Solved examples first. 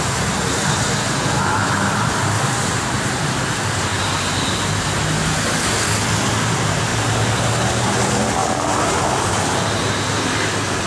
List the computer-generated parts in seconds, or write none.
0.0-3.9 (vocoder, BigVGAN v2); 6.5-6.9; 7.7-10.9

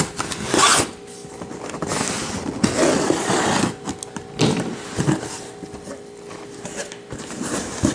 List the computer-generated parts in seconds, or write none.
none

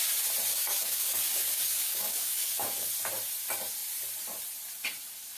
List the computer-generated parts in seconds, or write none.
0.5-2.9 (codec, DAC)

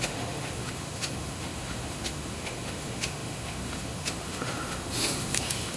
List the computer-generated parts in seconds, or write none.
0.0-5.8 (autoencoder, DAC-VAE)

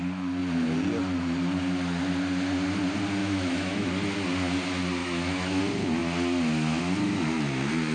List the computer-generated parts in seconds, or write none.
3.2-3.9 (autoencoder, DAC-VAE); 5.0-5.6

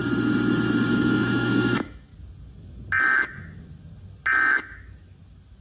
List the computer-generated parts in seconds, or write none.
0.9-2.1 (autoencoder, DAC-VAE)

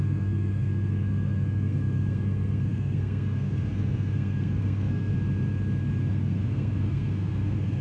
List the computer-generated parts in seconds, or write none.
0.0-5.1 (codec, SNAC); 6.1-7.8